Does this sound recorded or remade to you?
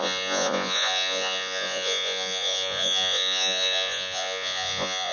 remade